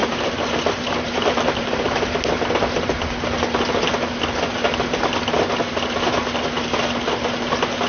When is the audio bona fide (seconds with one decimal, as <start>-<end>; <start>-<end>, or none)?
2.2-7.9